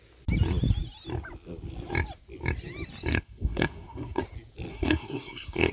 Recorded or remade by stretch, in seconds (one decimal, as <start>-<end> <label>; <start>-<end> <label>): 0.0-3.1 recorded; 3.1-4.2 remade; 4.2-4.7 recorded; 4.7-5.7 remade